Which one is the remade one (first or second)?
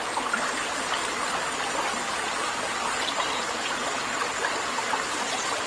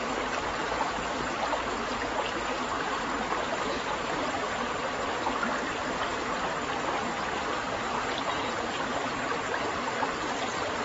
second